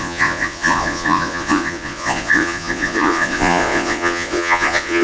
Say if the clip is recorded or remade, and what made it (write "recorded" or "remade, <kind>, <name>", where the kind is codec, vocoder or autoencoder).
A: remade, vocoder, Vocos